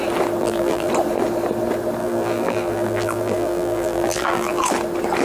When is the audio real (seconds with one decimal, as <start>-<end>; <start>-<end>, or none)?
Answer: 0.0-0.4; 0.9-2.0; 4.6-5.2